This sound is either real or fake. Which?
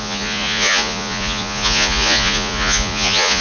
fake